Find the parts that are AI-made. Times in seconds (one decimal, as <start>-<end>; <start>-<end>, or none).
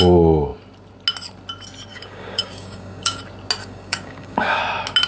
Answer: 1.9-3.2; 3.6-4.6